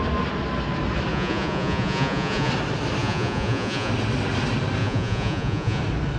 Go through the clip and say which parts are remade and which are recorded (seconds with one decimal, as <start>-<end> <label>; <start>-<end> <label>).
0.0-1.1 recorded; 1.1-2.5 remade; 2.5-3.0 recorded; 3.0-3.9 remade; 3.9-4.8 recorded; 4.8-5.8 remade; 5.8-6.2 recorded